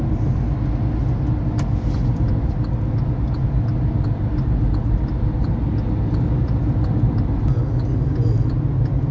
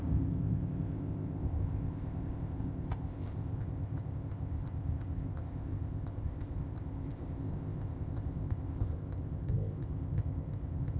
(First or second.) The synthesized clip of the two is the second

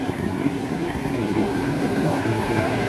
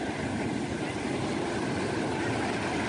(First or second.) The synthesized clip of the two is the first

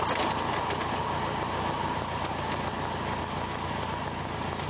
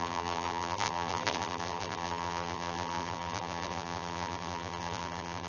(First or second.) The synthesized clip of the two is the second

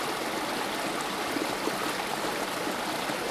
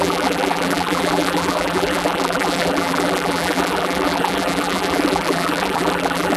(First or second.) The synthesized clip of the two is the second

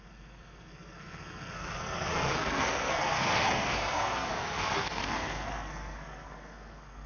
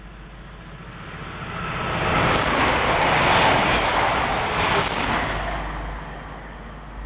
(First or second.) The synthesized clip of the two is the first